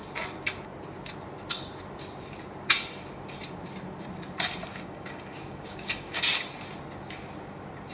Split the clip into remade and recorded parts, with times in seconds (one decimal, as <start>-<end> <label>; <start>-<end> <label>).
0.0-4.7 recorded; 4.7-6.2 remade; 6.2-7.9 recorded